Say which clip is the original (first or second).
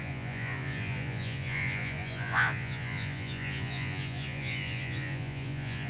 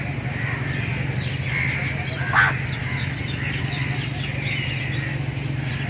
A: second